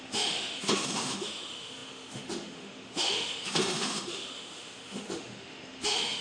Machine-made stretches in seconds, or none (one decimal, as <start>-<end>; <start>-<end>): 0.0-6.2